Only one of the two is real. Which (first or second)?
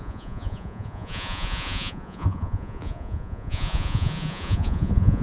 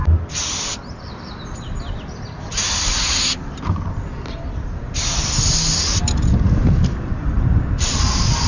second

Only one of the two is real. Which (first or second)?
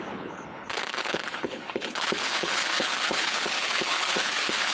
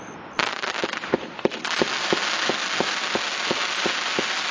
second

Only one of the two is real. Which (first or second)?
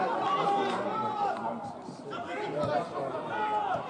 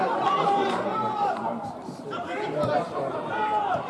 first